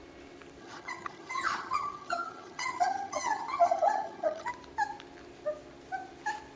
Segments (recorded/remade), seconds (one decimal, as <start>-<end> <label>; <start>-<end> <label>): 0.0-0.6 recorded; 0.6-4.5 remade; 4.5-6.6 recorded